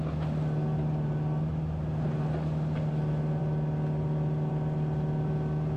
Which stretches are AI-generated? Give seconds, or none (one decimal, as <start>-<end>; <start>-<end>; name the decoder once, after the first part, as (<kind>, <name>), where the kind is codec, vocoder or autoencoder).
none

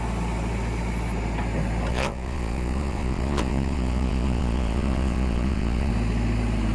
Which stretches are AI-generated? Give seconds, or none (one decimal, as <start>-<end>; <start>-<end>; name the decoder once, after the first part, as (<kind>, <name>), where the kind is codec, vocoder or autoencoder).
1.9-5.9 (vocoder, Vocos)